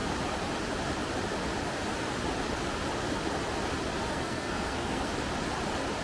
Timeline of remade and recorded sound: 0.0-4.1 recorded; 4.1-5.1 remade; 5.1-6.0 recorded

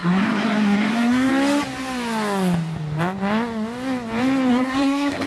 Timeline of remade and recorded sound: 0.0-1.3 remade; 1.3-4.5 recorded; 4.5-5.3 remade

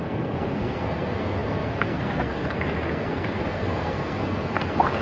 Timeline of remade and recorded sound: 0.0-5.0 remade

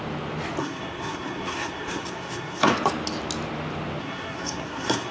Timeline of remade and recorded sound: 0.0-0.6 recorded; 0.6-2.7 remade; 2.7-4.0 recorded; 4.0-5.1 remade

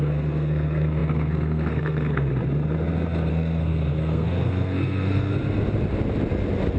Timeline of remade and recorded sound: 0.0-2.3 remade; 2.3-3.3 recorded; 3.3-5.3 remade; 5.3-6.8 recorded

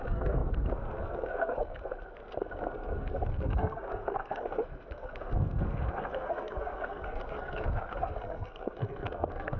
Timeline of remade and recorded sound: 0.0-9.6 remade

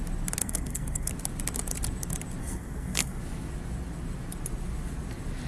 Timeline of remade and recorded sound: 0.0-0.4 recorded; 0.4-1.1 remade; 1.1-2.4 recorded; 2.4-3.2 remade; 3.2-5.5 recorded